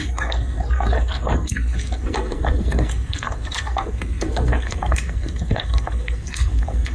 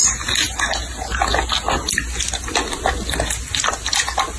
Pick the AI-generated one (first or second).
first